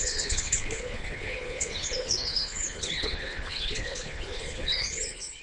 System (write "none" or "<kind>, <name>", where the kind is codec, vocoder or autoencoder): codec, HILCodec